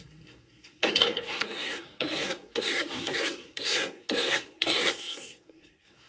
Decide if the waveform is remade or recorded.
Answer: remade